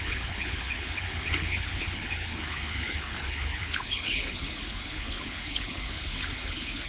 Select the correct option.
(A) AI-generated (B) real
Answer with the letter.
A